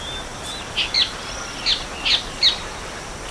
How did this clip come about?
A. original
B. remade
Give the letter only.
A